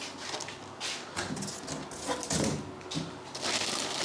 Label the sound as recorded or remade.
recorded